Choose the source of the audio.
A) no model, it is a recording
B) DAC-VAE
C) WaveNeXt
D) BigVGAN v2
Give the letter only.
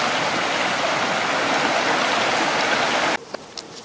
A